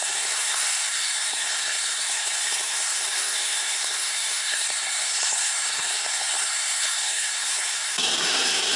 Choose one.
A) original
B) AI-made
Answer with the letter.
B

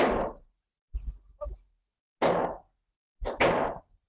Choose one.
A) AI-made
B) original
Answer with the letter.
B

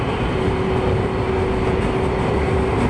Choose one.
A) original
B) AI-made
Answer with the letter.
A